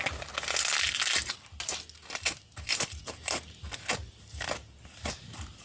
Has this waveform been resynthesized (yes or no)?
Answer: no